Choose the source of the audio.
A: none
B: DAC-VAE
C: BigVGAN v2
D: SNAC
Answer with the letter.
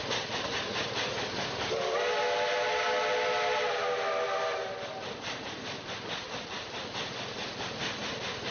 A